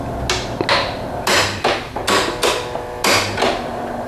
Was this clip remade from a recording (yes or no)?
no